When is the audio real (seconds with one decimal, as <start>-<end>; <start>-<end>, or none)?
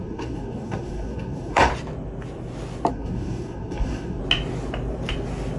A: 1.7-2.9; 4.2-5.6